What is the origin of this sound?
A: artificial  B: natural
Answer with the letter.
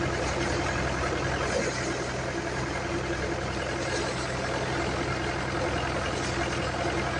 B